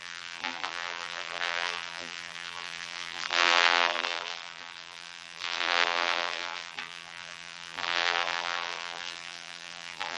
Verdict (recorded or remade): remade